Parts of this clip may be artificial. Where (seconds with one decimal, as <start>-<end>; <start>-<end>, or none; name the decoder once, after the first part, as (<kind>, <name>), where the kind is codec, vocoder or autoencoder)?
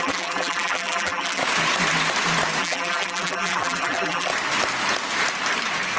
0.0-1.4 (vocoder, BigVGAN v2); 2.6-4.3